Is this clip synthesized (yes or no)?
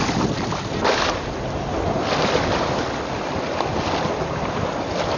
no